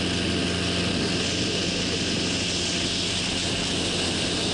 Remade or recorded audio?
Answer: recorded